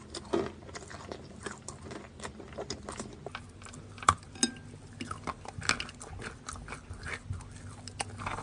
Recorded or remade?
recorded